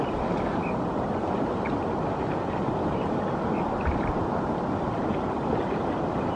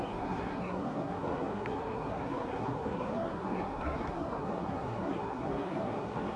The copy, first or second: second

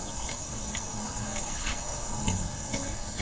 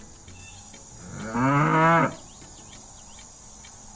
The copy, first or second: first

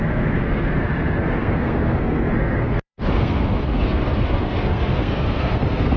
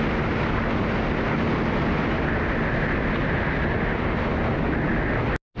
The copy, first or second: first